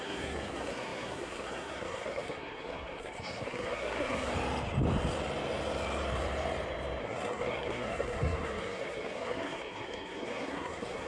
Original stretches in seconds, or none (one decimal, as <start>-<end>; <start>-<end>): 4.3-7.0